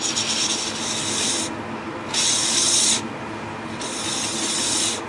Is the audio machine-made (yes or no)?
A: no